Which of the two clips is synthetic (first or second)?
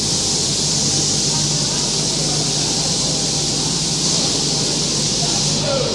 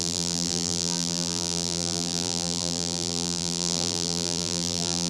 second